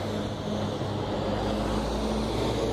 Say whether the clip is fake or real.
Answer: real